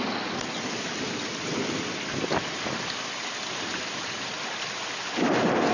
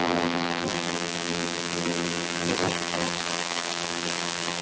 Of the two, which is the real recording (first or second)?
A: first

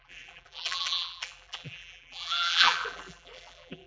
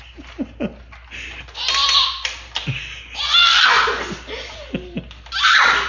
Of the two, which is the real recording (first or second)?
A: second